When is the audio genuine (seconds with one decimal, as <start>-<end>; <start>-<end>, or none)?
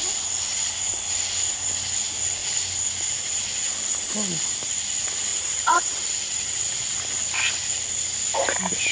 0.0-5.3; 7.0-8.9